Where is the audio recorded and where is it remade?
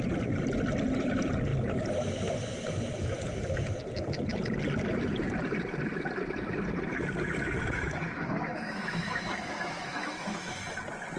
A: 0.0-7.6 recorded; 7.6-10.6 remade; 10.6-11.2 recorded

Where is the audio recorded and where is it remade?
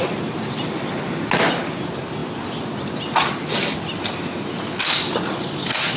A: 0.0-6.0 recorded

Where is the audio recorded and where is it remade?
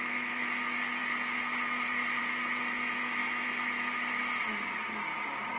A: 0.0-5.6 recorded